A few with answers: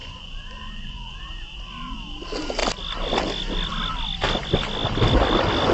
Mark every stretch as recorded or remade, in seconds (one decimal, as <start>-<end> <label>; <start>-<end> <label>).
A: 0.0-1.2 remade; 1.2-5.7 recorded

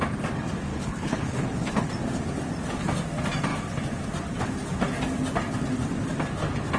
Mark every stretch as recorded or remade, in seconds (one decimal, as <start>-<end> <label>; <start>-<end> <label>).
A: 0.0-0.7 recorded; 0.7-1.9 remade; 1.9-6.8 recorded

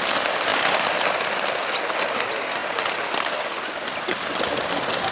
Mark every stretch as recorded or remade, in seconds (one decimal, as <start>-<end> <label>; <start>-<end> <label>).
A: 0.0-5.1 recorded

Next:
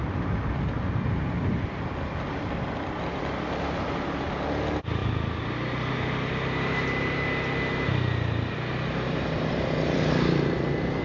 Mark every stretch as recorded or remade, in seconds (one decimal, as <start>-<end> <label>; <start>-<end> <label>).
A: 0.0-11.0 recorded